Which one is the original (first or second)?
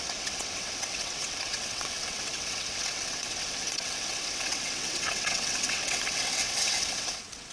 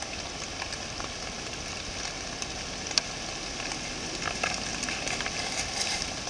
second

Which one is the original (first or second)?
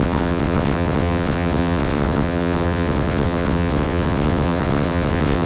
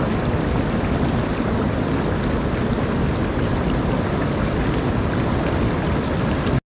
second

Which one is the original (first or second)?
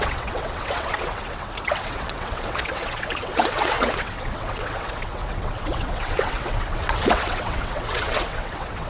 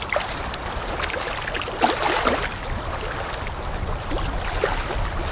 second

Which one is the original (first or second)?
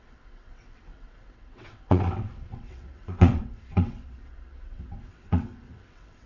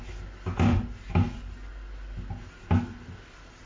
second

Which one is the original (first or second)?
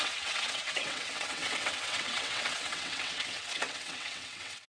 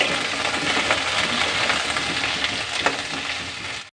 second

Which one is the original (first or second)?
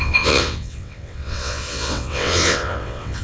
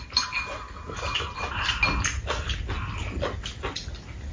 second